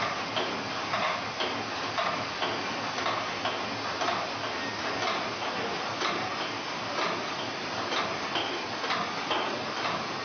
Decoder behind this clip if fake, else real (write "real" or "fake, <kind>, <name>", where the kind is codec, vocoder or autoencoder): real